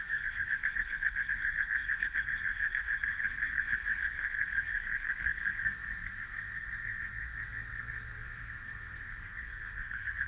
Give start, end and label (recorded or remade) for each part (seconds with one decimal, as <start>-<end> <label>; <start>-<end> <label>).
0.0-10.3 remade